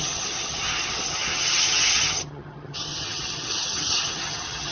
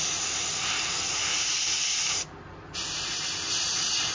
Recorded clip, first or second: second